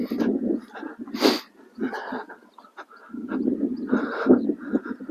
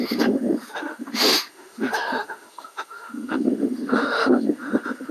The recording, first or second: first